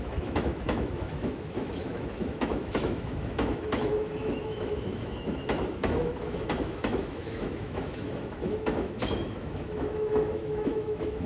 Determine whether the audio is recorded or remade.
remade